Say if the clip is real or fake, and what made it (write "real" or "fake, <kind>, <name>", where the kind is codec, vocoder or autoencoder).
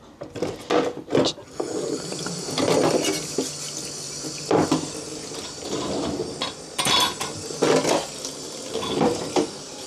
real